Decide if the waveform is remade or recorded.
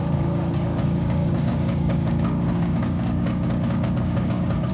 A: remade